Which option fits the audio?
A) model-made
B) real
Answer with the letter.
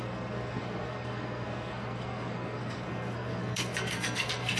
A